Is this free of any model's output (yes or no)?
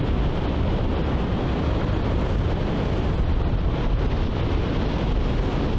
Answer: yes